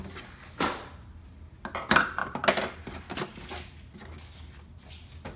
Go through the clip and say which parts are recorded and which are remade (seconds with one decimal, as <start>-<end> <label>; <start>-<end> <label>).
0.0-5.4 recorded